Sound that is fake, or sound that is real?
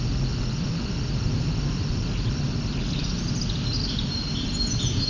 real